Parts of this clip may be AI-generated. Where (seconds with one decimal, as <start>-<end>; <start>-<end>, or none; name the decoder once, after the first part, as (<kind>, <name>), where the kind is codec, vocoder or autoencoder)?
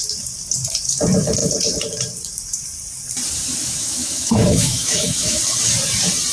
3.6-5.4 (autoencoder, DAC-VAE)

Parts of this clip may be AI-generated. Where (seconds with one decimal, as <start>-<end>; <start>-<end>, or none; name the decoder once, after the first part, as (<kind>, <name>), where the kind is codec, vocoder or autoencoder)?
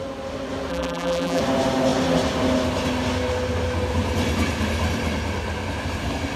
0.7-1.4 (vocoder, BigVGAN v2)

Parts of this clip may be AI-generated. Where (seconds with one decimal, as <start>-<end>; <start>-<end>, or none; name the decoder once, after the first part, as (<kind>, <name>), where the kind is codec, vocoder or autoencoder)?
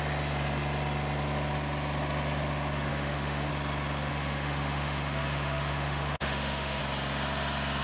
2.9-3.5 (autoencoder, DAC-VAE); 4.1-6.8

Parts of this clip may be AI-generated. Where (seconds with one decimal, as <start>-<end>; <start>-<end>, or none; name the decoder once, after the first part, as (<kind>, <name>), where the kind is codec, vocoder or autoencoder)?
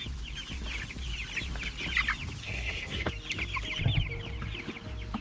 2.4-3.1 (codec, SNAC)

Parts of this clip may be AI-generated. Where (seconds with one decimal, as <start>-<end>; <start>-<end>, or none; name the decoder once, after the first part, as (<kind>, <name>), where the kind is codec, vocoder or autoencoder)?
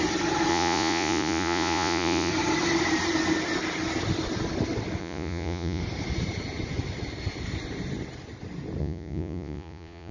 0.5-2.3 (vocoder, Vocos); 5.0-5.8; 8.8-10.1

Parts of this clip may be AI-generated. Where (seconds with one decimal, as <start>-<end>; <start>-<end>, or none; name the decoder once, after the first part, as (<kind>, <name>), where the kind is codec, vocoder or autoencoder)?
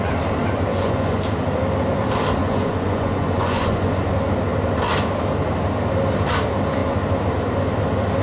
0.7-1.2 (vocoder, Vocos); 2.4-4.0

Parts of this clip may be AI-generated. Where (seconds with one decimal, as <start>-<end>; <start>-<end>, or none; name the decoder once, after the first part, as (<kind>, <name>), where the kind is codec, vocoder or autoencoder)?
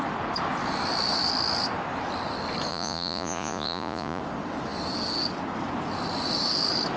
2.7-4.2 (vocoder, Vocos)